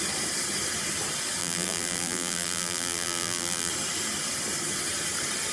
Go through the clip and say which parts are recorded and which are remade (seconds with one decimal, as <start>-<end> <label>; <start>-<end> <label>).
0.0-1.4 recorded; 1.4-3.7 remade; 3.7-5.5 recorded